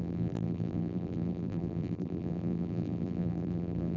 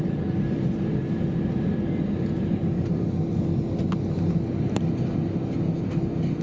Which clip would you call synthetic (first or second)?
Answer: first